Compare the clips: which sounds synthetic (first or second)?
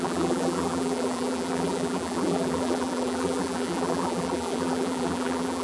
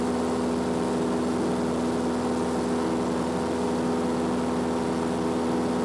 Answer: first